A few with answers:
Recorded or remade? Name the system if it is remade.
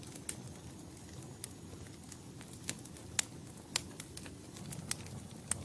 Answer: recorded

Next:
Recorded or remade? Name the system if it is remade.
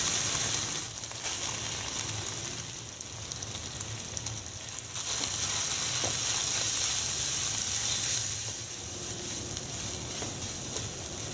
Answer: recorded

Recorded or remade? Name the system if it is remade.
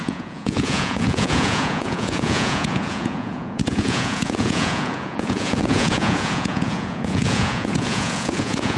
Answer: remade, vocoder, Vocos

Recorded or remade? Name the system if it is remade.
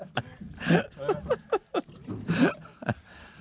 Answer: recorded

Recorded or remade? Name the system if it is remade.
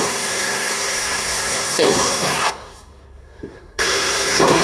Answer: remade, codec, SNAC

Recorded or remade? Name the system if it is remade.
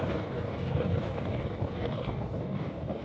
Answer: remade, codec, DAC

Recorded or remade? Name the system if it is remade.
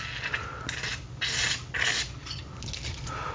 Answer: recorded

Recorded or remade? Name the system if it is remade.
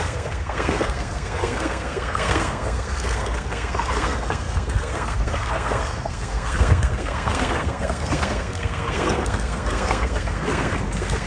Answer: remade, codec, SNAC